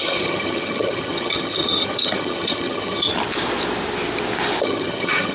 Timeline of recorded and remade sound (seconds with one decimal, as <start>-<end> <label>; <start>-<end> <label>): 0.0-3.1 remade; 3.1-4.6 recorded; 4.6-5.3 remade